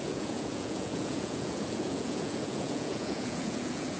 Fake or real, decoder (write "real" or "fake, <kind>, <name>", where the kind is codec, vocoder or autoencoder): fake, vocoder, Vocos